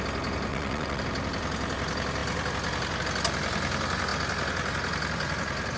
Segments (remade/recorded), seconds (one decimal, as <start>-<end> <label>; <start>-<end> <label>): 0.0-0.5 recorded; 0.5-1.0 remade; 1.0-5.8 recorded